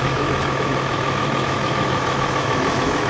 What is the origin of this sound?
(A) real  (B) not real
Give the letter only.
B